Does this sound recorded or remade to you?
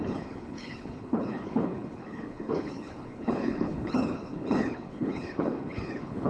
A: remade